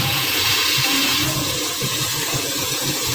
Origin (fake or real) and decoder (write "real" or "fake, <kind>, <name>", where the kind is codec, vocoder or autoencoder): fake, vocoder, Vocos